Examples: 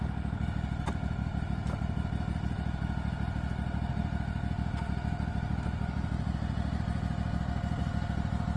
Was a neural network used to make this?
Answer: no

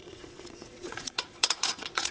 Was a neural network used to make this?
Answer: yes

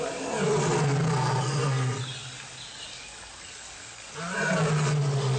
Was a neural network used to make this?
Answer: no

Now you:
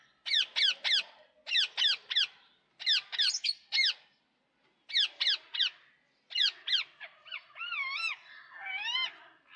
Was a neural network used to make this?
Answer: no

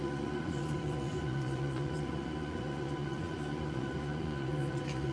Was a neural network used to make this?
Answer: yes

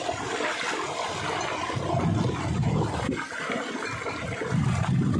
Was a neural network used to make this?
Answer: no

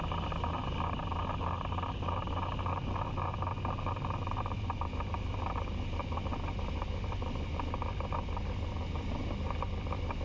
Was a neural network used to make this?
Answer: no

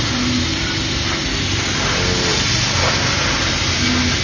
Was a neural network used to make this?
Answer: no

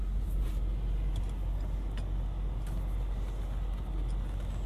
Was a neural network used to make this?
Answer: no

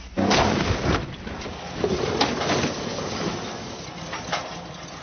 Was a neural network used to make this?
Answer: no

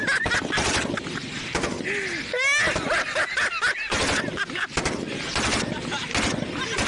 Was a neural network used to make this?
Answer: no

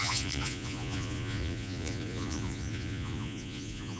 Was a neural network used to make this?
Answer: yes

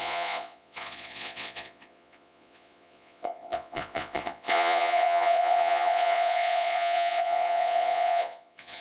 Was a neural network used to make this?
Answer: yes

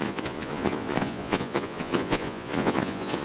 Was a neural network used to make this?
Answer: yes